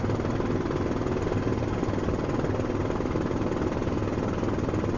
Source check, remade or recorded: recorded